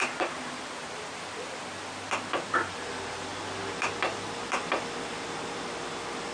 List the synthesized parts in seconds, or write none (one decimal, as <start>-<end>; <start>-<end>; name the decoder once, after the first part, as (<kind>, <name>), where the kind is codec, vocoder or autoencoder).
none